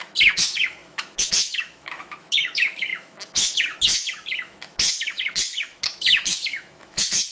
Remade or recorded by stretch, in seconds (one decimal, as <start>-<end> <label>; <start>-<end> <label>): 0.0-7.3 remade